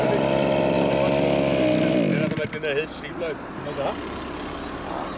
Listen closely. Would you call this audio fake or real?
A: real